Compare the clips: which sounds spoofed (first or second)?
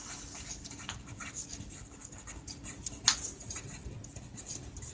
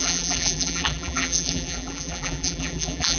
second